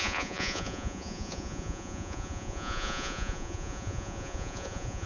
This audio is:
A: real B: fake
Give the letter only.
B